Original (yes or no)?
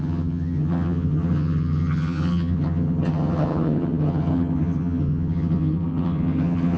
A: no